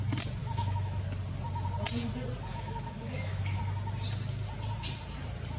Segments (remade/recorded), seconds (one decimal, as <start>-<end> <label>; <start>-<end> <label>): 0.0-0.4 recorded; 0.4-1.0 remade; 1.0-2.5 recorded; 2.5-3.6 remade; 3.6-5.6 recorded